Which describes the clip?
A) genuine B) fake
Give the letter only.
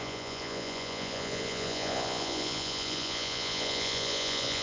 B